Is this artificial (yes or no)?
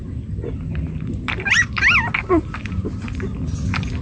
no